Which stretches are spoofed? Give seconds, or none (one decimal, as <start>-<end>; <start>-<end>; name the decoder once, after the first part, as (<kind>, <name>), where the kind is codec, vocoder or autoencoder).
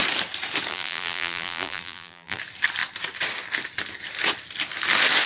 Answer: 0.7-2.4 (vocoder, BigVGAN v2)